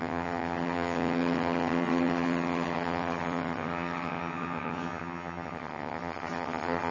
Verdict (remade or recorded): remade